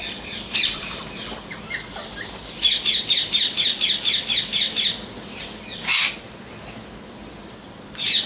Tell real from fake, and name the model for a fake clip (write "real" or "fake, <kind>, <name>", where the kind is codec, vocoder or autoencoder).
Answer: real